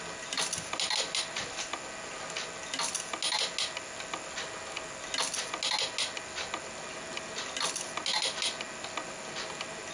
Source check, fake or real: real